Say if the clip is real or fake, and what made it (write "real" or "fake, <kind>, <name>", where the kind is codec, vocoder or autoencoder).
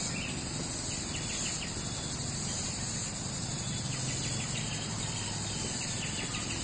real